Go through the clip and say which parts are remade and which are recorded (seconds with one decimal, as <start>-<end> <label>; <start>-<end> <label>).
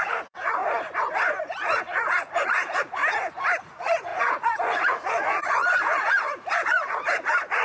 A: 0.0-0.6 remade; 0.6-1.4 recorded; 1.4-3.0 remade; 3.0-3.6 recorded; 3.6-7.6 remade